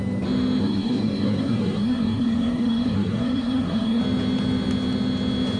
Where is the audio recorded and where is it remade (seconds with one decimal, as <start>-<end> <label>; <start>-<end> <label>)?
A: 0.0-0.6 recorded; 0.6-4.0 remade; 4.0-5.6 recorded